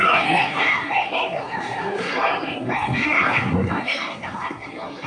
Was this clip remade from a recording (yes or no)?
yes